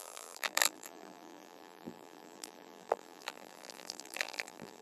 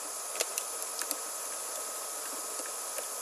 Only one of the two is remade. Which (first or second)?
first